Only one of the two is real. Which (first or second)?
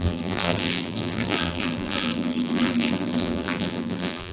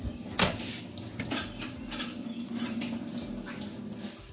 second